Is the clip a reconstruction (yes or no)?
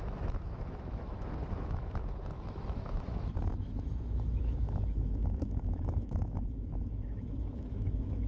yes